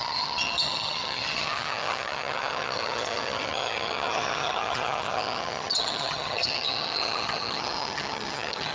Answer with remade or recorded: remade